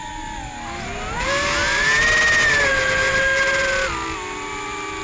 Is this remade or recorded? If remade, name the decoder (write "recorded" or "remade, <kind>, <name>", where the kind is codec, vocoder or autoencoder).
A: recorded